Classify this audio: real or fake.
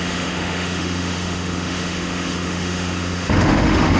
fake